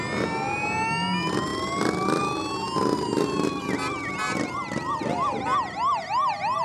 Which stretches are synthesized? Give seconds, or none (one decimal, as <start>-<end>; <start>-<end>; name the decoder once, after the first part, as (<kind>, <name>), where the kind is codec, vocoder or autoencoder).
none